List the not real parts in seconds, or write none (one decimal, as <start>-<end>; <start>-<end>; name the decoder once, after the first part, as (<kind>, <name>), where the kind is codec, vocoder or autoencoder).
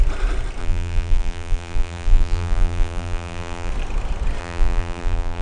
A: 0.6-3.7 (vocoder, BigVGAN v2); 4.4-5.4